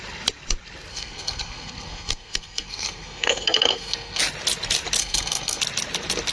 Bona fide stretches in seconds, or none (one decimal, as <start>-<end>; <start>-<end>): 0.0-0.9; 4.2-5.0; 5.6-6.3